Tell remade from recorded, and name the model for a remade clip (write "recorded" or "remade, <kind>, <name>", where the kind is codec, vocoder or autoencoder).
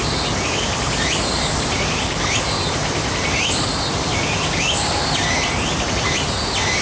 recorded